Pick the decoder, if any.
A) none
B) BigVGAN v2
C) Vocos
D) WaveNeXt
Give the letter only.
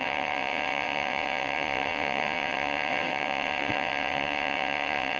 D